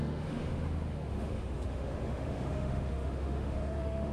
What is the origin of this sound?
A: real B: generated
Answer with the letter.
B